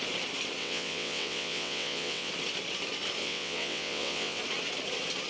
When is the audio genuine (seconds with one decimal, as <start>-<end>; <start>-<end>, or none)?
0.0-0.6; 2.3-3.2; 4.4-5.3